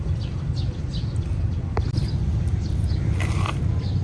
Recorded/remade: recorded